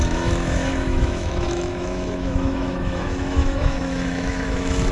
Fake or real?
fake